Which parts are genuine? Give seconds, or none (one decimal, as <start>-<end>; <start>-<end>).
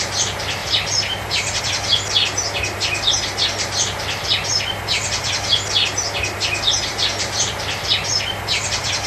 0.0-0.6; 1.6-6.9; 7.5-9.1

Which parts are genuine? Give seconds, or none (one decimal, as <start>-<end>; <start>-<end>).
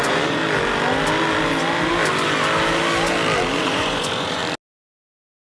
0.4-3.6; 4.4-5.0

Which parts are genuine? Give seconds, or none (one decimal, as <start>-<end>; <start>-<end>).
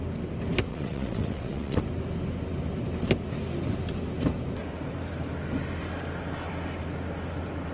0.0-0.7; 1.8-7.7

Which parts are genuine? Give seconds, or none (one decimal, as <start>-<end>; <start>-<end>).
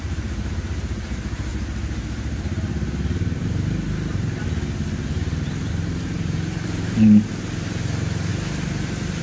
1.5-5.7; 8.3-9.2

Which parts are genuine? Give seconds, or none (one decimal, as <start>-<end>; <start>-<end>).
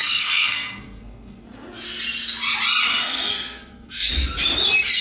1.4-2.9; 4.1-5.0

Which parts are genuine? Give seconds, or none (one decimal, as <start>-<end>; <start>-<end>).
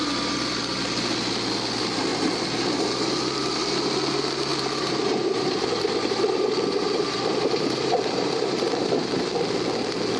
0.0-4.5; 9.3-10.2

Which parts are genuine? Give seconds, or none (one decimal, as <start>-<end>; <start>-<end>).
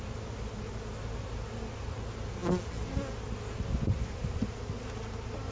0.0-5.5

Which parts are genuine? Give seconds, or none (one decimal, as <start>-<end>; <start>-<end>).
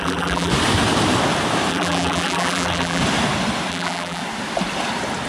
0.5-1.7; 3.0-3.7; 4.2-5.3